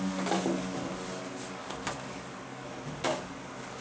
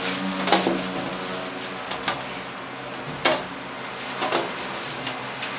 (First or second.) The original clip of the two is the second